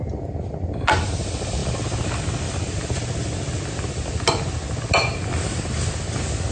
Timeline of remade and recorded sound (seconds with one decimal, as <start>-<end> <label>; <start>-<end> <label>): 0.0-6.5 recorded